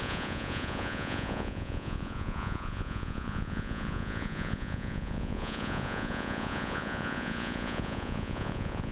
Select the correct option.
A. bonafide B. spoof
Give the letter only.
B